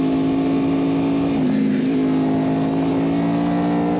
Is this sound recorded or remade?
recorded